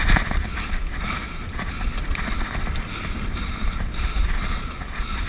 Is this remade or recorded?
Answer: recorded